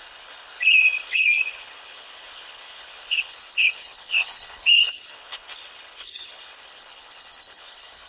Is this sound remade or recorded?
remade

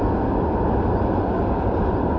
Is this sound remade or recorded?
recorded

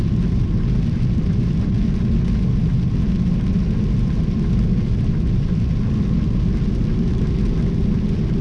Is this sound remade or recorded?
recorded